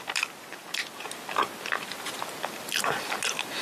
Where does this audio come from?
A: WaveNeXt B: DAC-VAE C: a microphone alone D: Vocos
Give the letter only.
C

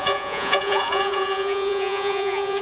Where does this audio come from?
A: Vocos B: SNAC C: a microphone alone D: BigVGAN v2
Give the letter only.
A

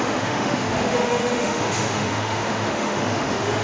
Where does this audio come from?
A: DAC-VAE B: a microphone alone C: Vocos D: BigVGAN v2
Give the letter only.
A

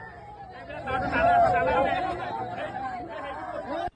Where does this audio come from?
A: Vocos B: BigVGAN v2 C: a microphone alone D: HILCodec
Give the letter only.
B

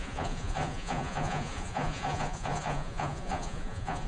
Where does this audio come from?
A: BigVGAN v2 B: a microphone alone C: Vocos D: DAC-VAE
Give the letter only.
C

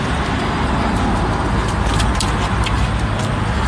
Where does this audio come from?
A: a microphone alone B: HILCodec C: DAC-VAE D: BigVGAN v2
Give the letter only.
A